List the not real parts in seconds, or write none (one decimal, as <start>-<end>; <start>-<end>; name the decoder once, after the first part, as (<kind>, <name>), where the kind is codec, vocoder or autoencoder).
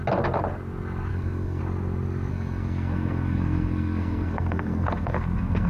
1.1-1.6 (codec, SNAC); 2.3-5.7